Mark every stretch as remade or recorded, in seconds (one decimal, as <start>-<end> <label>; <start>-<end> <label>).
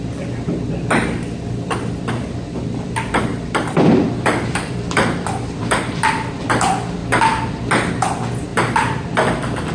0.0-3.3 recorded; 3.3-6.1 remade; 6.1-8.5 recorded; 8.5-9.7 remade